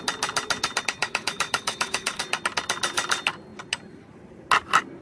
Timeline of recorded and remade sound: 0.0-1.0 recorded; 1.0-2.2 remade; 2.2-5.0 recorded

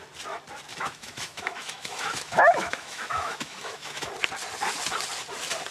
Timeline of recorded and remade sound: 0.0-0.7 recorded; 0.7-4.1 remade; 4.1-5.7 recorded

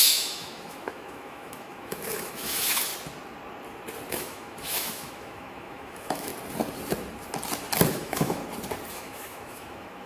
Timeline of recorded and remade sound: 0.0-2.9 remade; 2.9-4.1 recorded; 4.1-6.3 remade; 6.3-7.9 recorded; 7.9-8.4 remade; 8.4-8.9 recorded; 8.9-10.1 remade